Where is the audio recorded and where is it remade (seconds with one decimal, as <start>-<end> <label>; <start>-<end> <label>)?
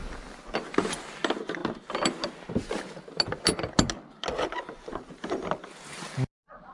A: 0.0-6.7 recorded